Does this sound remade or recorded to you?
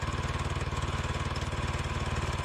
recorded